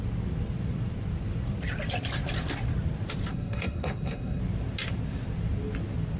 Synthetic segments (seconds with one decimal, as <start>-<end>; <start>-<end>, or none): 3.3-4.4